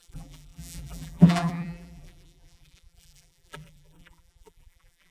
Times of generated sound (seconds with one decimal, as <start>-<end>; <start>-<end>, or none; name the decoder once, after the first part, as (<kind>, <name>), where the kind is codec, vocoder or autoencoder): 0.0-5.1 (vocoder, BigVGAN v2)